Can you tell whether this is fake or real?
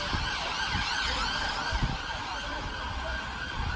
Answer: real